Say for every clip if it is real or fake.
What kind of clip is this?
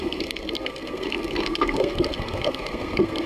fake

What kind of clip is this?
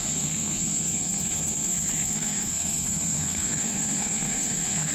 fake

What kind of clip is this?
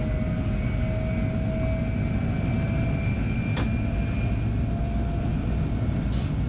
real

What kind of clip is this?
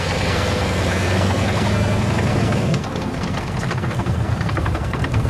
fake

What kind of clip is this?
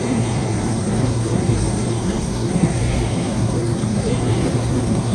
fake